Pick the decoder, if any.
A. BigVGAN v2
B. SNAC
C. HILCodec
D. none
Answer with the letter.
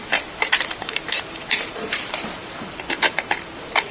A